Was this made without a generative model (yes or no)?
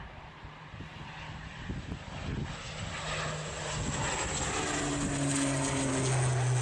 yes